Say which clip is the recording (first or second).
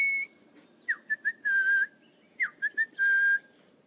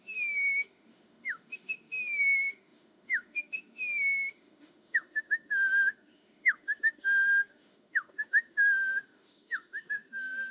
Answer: first